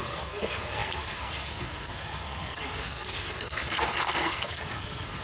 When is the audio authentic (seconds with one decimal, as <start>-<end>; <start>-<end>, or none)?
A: none